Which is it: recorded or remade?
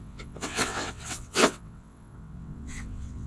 remade